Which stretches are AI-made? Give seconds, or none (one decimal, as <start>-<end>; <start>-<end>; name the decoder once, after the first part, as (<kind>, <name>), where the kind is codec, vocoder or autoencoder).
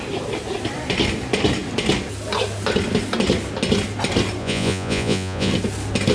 4.4-5.5 (vocoder, Vocos)